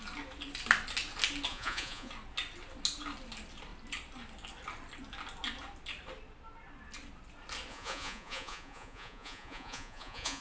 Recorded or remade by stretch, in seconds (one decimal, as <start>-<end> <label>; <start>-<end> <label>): 0.0-1.5 recorded; 1.5-2.1 remade; 2.1-7.7 recorded; 7.7-10.4 remade